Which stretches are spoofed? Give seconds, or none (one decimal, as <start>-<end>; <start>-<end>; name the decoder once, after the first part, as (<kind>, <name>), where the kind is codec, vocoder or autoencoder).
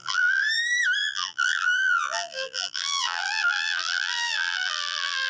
0.0-0.4 (vocoder, BigVGAN v2); 1.0-5.3